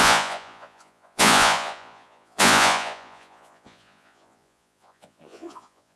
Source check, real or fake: fake